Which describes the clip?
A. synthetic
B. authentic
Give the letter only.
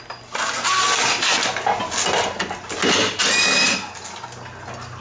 B